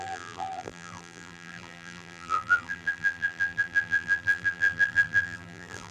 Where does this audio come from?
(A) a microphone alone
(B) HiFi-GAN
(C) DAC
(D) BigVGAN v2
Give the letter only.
D